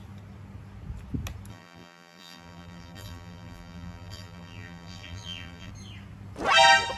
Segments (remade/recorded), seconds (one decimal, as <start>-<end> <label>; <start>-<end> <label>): 0.0-1.5 recorded; 1.5-5.7 remade; 5.7-7.0 recorded